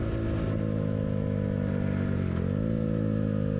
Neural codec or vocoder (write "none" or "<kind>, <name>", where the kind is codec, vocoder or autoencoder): none